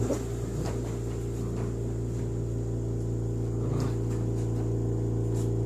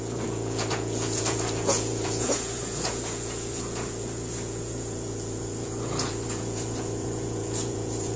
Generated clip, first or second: second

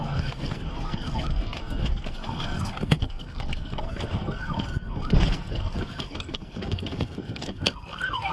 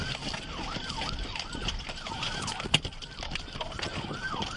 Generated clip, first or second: first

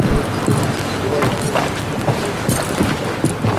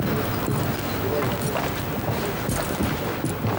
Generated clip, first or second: first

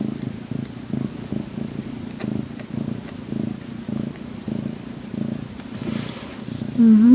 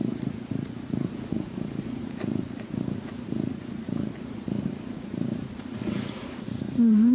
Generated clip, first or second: second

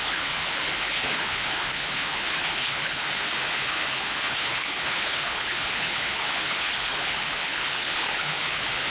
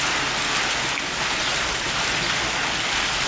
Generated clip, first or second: first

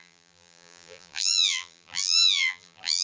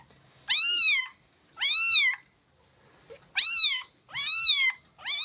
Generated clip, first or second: first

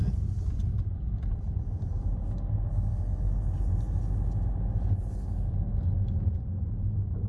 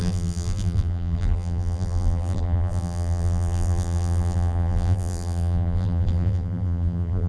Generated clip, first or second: second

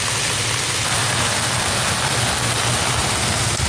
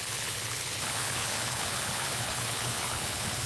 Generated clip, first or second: second